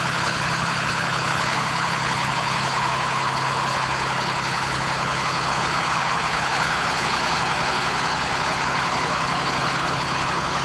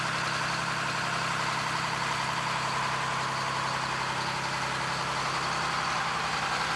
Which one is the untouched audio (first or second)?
second